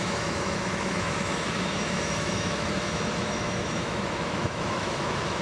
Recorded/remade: remade